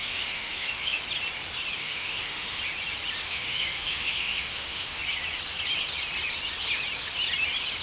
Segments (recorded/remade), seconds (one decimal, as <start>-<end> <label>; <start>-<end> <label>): 0.0-1.0 remade; 1.0-1.8 recorded; 1.8-2.6 remade; 2.6-3.2 recorded; 3.2-5.0 remade; 5.0-7.8 recorded